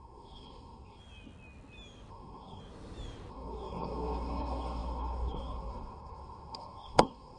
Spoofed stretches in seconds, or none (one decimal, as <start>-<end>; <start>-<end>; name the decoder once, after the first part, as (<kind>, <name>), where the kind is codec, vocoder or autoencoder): 0.0-1.0 (codec, SNAC); 2.1-2.6; 3.3-7.4